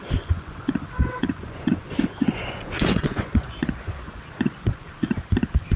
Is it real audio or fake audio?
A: fake